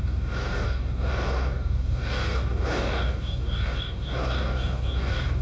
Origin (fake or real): fake